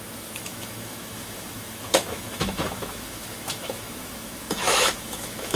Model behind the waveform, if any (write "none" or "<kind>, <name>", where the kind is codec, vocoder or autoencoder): autoencoder, DAC-VAE